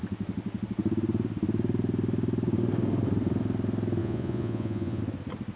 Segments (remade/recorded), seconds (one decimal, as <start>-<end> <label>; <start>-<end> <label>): 0.0-4.0 recorded; 4.0-5.0 remade; 5.0-5.6 recorded

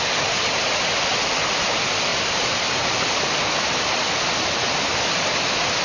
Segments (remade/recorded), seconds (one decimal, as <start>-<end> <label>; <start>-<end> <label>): 0.0-2.1 recorded; 2.1-3.0 remade; 3.0-5.8 recorded

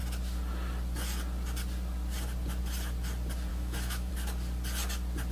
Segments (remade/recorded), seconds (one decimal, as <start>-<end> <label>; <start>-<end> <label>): 0.0-3.5 recorded; 3.5-4.1 remade; 4.1-5.3 recorded

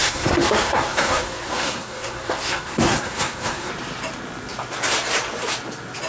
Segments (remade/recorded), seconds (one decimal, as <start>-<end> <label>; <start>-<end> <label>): 0.0-3.7 remade; 3.7-6.1 recorded